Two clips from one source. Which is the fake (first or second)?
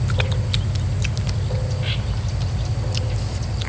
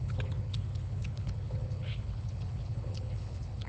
second